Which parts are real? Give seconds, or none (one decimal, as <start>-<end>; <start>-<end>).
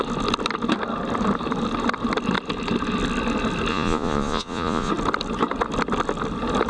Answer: 0.0-3.7; 4.9-6.7